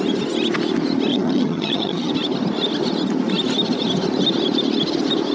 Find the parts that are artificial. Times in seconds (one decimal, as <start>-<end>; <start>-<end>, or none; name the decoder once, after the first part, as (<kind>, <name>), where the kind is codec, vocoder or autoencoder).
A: 1.1-2.1 (vocoder, HiFi-GAN)